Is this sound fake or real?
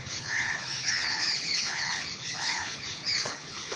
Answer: fake